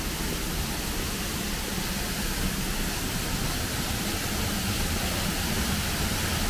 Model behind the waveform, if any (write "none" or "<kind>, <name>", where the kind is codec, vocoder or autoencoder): none